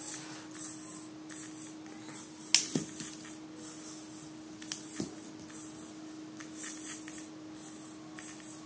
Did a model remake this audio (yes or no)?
no